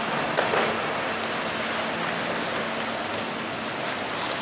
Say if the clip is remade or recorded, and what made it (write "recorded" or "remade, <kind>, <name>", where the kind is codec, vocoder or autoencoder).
recorded